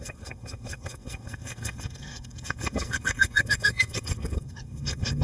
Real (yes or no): no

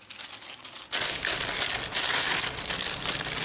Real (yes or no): yes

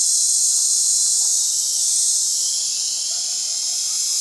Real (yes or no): yes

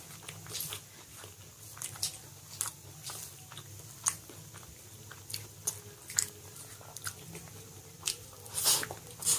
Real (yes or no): yes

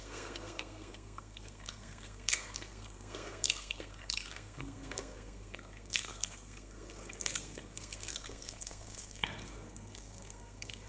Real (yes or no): no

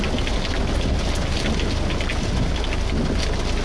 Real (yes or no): yes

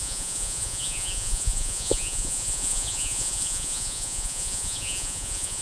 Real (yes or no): no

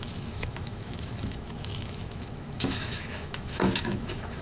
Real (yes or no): no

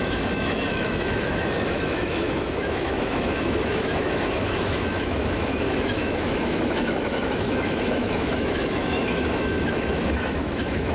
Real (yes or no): no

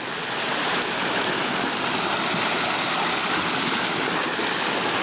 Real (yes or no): yes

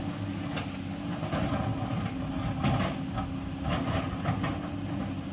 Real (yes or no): yes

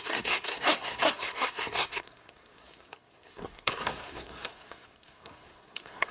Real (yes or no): no